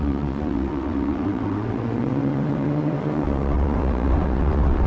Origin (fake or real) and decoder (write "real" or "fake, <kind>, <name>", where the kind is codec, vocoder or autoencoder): fake, vocoder, WaveNeXt